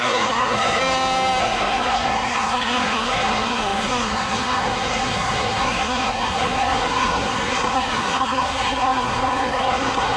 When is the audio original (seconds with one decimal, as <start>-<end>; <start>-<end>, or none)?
0.8-1.4